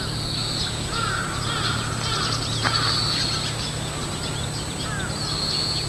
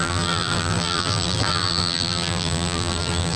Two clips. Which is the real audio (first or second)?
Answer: first